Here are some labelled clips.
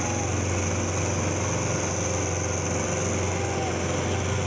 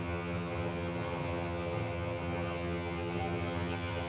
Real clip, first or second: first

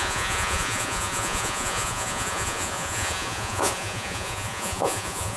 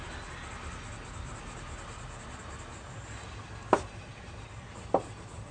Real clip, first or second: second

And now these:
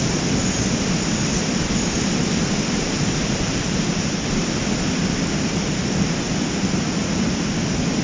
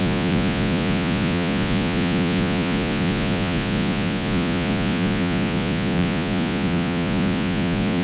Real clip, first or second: first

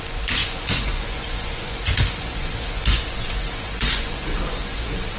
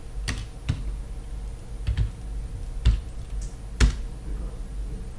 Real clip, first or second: second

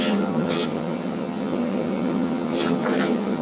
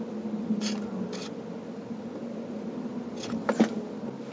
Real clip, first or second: second